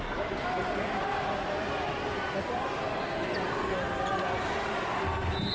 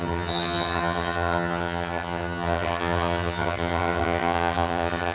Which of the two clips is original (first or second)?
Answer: first